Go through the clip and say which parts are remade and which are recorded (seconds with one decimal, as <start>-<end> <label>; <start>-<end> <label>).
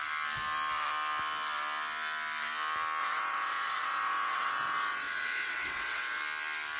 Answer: 0.0-3.0 recorded; 3.0-6.2 remade; 6.2-6.8 recorded